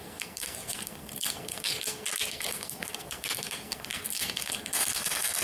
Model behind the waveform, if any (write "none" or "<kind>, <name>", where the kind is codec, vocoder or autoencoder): codec, SNAC